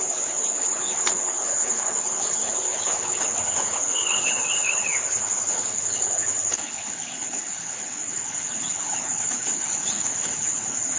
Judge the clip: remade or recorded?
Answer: remade